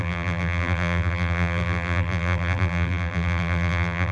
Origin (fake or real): fake